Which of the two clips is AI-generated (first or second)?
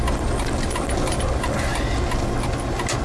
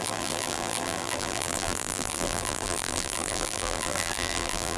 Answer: second